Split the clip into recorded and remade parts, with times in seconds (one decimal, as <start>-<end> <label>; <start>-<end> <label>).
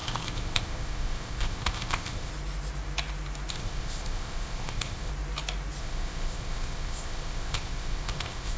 0.0-2.3 remade; 2.3-3.5 recorded; 3.5-5.1 remade; 5.1-5.8 recorded; 5.8-8.6 remade